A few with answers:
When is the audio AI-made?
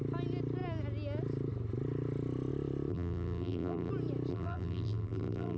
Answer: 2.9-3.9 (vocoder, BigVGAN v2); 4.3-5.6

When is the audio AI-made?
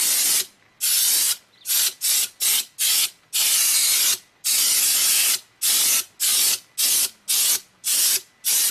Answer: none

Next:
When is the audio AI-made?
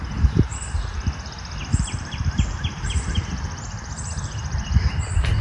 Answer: 1.7-4.9 (vocoder, BigVGAN v2)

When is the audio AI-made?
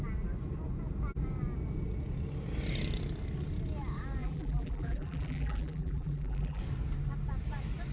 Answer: 4.2-6.6 (vocoder, BigVGAN v2)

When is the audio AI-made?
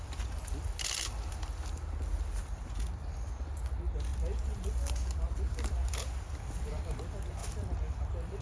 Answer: 4.1-5.9 (vocoder, BigVGAN v2); 7.4-8.4